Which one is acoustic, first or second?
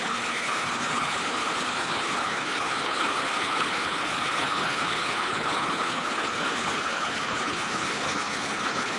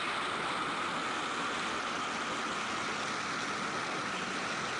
second